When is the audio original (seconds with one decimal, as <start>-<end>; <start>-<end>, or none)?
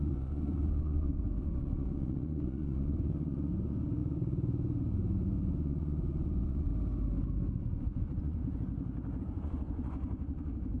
6.7-7.6; 8.4-9.2